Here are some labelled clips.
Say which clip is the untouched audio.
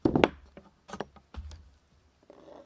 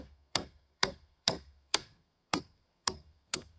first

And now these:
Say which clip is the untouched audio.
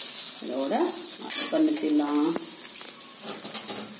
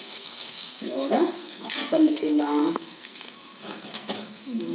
first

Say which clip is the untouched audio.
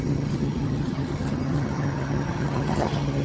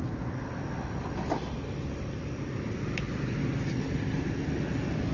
second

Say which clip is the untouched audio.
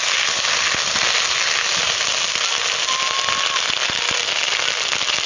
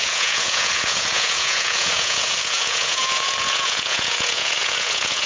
first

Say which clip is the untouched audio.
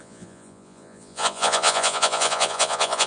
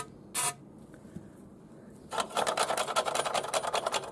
second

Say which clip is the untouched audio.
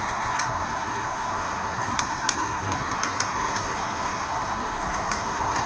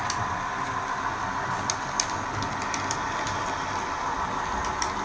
second